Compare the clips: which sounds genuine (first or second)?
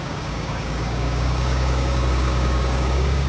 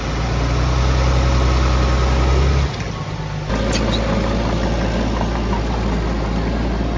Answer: second